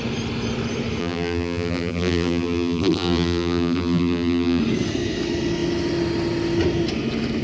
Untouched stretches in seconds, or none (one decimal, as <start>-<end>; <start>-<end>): 0.0-1.0; 4.6-7.4